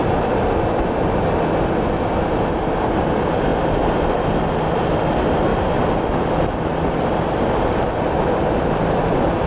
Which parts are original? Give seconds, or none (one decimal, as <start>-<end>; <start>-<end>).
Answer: 0.0-3.5; 4.9-9.5